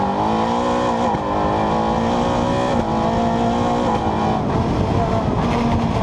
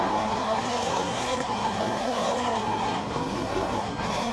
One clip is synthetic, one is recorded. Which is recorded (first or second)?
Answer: first